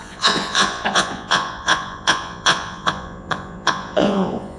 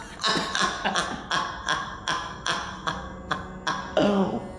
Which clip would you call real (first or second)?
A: second